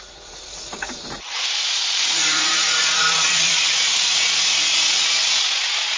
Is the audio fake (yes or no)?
yes